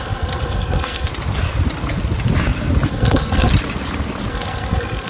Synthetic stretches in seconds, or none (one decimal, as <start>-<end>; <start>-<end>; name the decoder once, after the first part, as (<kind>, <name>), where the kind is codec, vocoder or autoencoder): 0.0-1.1 (codec, SNAC); 2.9-3.5; 4.3-5.1